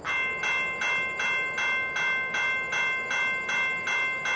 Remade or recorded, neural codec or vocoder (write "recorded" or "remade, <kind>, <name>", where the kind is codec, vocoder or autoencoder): recorded